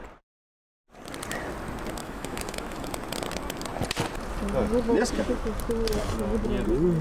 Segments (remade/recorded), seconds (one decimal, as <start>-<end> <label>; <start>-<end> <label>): 0.0-2.0 recorded; 2.0-2.9 remade; 2.9-7.0 recorded